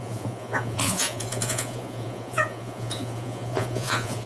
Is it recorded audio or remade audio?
remade